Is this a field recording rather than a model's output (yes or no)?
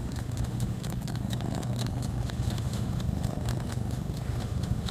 no